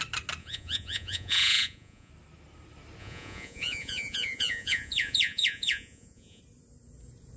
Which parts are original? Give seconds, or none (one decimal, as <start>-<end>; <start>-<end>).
0.0-0.4; 2.1-3.0; 6.4-7.4